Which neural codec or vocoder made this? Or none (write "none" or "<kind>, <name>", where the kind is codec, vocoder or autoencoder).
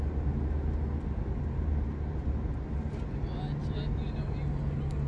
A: none